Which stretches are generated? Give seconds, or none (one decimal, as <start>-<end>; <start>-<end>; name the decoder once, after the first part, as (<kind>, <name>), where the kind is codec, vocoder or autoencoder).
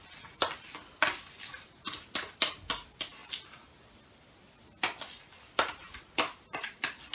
none